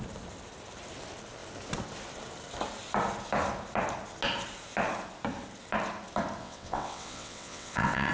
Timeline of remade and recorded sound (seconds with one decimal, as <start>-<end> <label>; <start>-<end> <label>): 0.0-6.4 recorded; 6.4-8.1 remade

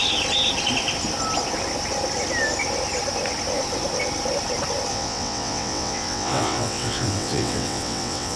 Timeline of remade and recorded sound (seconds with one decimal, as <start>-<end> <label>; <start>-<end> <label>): 0.0-4.9 recorded; 4.9-8.4 remade

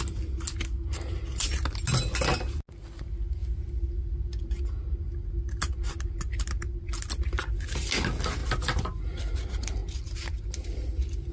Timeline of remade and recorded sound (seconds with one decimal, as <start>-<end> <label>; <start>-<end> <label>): 0.0-11.3 recorded

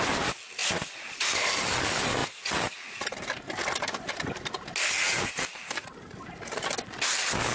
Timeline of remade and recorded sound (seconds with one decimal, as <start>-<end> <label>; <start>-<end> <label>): 0.0-7.5 recorded